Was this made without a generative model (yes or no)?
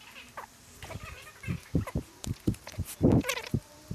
no